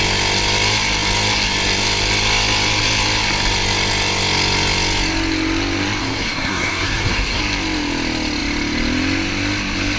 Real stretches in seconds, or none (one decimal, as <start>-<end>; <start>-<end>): 0.0-6.0; 7.4-10.0